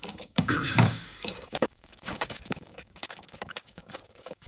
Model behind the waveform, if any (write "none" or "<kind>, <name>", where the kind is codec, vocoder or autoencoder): codec, DAC